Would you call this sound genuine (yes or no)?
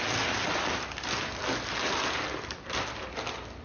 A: yes